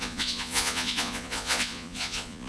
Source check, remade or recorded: remade